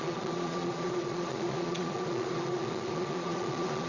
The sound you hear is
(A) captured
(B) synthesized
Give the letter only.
B